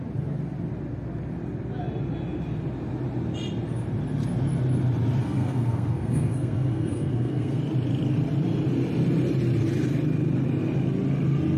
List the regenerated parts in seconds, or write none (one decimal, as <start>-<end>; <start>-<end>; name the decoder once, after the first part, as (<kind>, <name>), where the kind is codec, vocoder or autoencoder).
5.2-7.6 (codec, SNAC)